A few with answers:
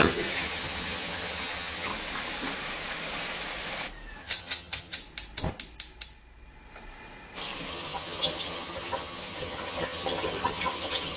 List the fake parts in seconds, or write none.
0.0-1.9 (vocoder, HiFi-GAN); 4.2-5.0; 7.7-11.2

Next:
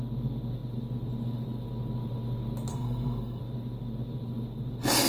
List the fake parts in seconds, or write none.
2.7-3.4 (codec, SNAC)

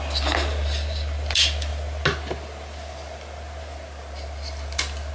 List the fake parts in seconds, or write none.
none

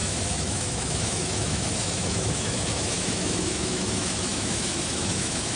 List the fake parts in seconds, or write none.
0.0-5.6 (autoencoder, DAC-VAE)

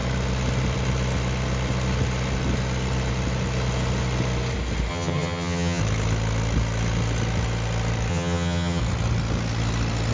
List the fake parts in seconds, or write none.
4.9-5.8 (vocoder, HiFi-GAN); 8.1-8.8

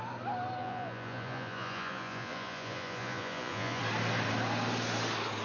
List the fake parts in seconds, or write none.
0.6-3.8 (vocoder, Vocos)